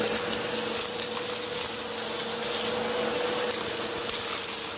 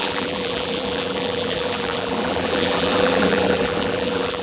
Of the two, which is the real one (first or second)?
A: first